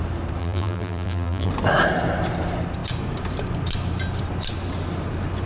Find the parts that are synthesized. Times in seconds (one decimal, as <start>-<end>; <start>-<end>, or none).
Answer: 0.4-1.5